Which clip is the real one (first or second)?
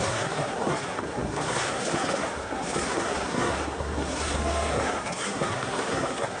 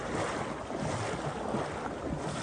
second